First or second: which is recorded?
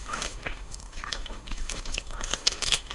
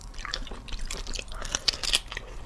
second